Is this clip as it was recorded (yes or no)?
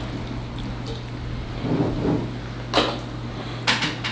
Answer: yes